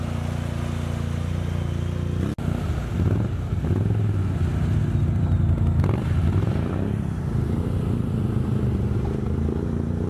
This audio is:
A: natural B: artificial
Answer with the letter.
A